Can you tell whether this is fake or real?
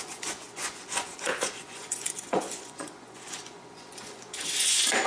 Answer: fake